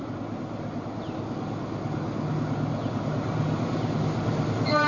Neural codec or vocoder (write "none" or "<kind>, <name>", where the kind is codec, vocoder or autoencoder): none